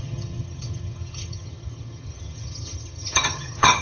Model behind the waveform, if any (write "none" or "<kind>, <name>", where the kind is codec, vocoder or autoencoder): vocoder, HiFi-GAN